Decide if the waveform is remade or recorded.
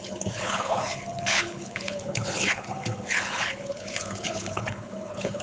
remade